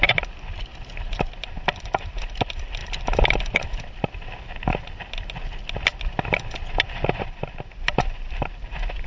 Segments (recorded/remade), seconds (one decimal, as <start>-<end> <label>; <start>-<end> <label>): 0.0-9.1 recorded